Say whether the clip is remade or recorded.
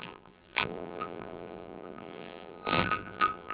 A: remade